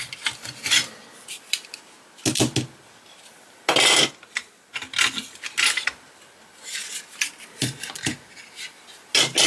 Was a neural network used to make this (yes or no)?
no